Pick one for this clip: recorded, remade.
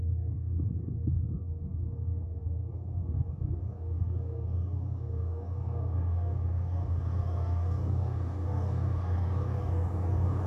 remade